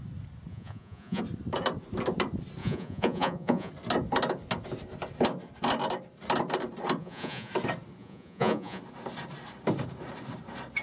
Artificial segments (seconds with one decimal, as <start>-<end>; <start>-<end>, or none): 0.5-1.2; 2.6-3.7; 7.0-7.5; 8.0-8.8